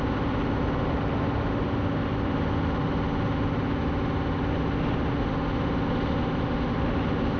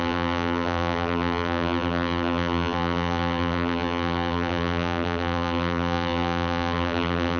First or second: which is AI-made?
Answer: second